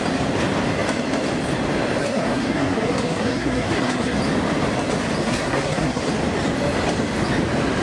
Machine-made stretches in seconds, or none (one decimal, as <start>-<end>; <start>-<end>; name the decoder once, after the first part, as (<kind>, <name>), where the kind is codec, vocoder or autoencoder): 2.0-4.2 (codec, SNAC); 5.2-6.0

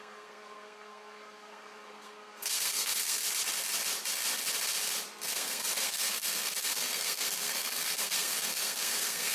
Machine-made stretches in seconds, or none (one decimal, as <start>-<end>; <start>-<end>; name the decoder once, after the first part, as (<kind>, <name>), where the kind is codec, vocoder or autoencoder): 0.0-3.2 (codec, SNAC); 5.3-9.3

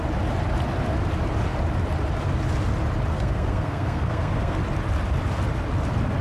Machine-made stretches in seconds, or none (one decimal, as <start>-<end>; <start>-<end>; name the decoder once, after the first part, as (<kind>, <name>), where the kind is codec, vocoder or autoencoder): 3.1-4.6 (codec, SNAC)

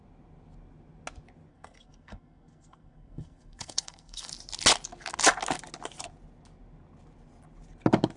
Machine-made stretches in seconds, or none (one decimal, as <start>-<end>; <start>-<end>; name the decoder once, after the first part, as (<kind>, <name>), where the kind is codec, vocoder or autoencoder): 1.5-4.3 (codec, SNAC)

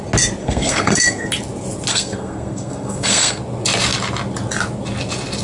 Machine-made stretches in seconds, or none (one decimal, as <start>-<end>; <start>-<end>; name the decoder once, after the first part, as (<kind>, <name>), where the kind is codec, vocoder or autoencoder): 0.4-1.3 (codec, SNAC); 1.9-3.4